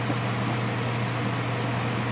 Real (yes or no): yes